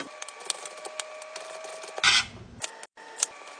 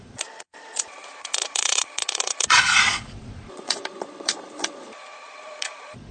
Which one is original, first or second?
first